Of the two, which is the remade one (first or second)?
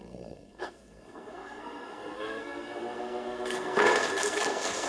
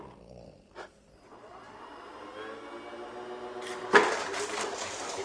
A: first